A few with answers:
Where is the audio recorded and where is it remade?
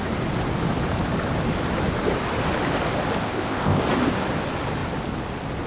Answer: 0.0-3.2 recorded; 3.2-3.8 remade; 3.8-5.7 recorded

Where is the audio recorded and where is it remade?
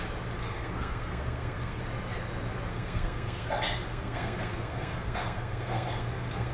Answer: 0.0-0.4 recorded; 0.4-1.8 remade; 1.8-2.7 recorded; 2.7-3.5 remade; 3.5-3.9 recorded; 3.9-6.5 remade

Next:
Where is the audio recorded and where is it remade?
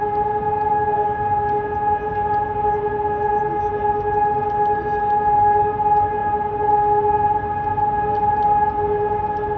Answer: 0.0-9.6 recorded